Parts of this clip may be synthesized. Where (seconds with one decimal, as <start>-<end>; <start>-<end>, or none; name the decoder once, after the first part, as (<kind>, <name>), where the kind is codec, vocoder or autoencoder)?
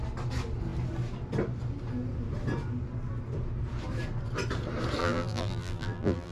5.0-6.3 (vocoder, BigVGAN v2)